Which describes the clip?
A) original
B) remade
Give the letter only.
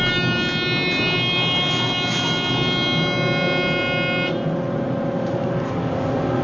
A